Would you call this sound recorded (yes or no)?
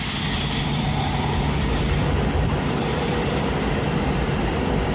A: no